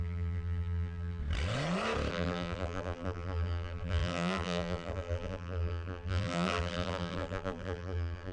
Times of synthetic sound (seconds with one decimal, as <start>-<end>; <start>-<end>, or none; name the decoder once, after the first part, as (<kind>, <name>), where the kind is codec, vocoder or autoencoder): 0.0-1.2 (vocoder, BigVGAN v2); 2.1-8.3